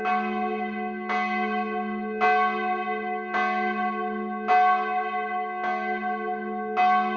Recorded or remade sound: recorded